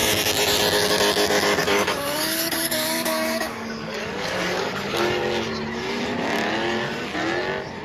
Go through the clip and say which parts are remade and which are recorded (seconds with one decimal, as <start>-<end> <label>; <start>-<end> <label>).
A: 0.0-1.6 recorded; 1.6-5.2 remade; 5.2-7.8 recorded

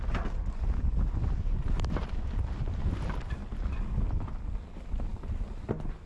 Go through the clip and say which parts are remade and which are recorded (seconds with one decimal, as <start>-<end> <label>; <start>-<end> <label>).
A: 0.0-6.1 recorded

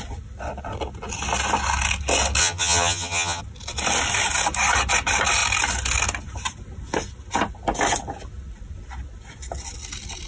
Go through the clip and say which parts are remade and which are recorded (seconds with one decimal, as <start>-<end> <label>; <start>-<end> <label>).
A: 0.0-2.4 recorded; 2.4-3.4 remade; 3.4-10.3 recorded

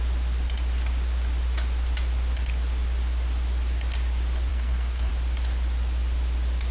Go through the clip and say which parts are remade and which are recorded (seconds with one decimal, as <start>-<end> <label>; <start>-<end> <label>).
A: 0.0-4.5 recorded; 4.5-5.1 remade; 5.1-6.7 recorded

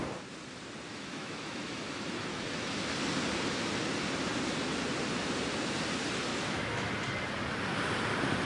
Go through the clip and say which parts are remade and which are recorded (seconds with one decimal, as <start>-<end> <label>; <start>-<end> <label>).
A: 0.0-0.9 recorded; 0.9-2.8 remade; 2.8-6.3 recorded; 6.3-6.9 remade; 6.9-8.4 recorded